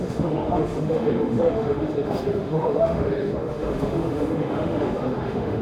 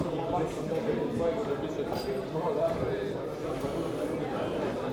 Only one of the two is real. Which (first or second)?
second